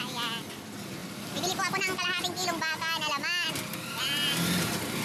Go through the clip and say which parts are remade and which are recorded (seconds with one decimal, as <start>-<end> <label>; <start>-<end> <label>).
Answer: 0.0-5.0 recorded